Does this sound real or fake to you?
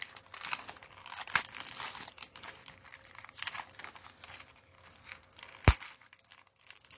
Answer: real